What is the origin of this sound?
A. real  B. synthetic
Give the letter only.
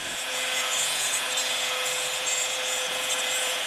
B